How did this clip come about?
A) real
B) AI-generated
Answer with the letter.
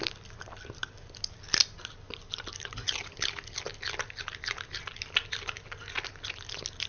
A